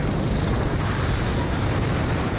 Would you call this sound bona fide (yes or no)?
yes